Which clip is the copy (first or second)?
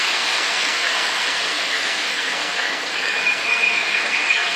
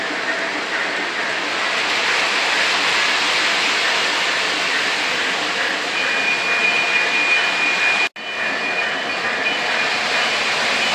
first